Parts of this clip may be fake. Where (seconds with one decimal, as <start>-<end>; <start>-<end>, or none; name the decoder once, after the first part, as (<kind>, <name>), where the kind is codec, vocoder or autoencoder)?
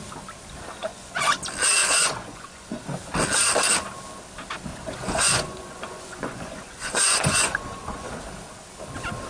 0.8-1.4 (vocoder, Vocos); 1.8-2.8; 4.7-8.1